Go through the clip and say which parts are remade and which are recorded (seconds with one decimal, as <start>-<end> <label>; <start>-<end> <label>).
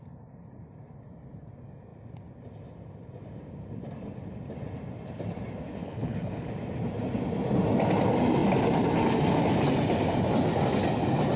0.0-5.8 recorded; 5.8-6.5 remade; 6.5-11.4 recorded